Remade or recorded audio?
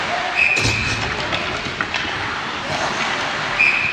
recorded